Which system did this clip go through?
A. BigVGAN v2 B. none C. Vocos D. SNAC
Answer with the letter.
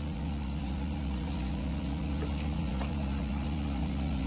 C